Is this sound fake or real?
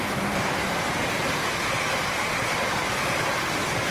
real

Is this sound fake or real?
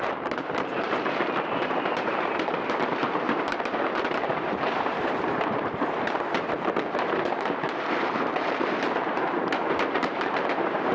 fake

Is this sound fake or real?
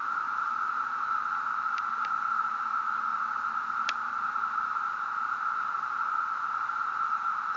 real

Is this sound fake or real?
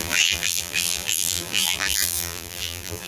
fake